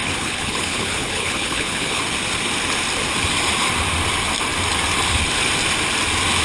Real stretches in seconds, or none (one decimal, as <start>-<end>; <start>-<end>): 2.0-6.4